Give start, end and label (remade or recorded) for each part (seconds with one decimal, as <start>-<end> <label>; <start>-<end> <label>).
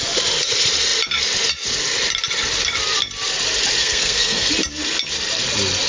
0.0-3.8 recorded; 3.8-4.5 remade; 4.5-5.9 recorded